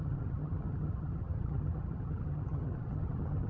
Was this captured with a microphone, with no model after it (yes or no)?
no